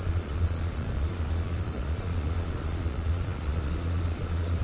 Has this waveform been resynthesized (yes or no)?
yes